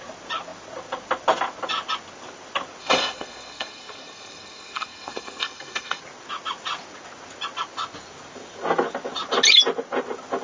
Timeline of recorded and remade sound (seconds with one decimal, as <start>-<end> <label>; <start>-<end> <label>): 0.0-2.8 recorded; 2.8-6.0 remade; 6.0-10.4 recorded